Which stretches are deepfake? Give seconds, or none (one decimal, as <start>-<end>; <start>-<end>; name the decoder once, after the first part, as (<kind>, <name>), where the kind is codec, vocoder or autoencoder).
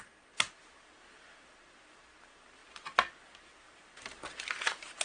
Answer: none